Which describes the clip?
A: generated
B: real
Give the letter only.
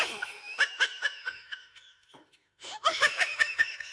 A